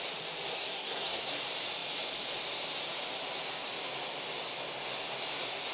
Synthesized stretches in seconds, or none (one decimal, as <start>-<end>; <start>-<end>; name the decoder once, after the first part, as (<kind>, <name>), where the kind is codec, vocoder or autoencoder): 0.5-1.3 (codec, SNAC)